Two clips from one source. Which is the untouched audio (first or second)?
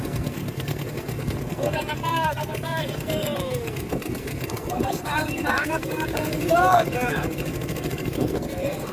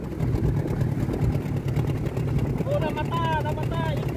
second